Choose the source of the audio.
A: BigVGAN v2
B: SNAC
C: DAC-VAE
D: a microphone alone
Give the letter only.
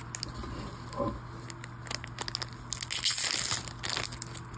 D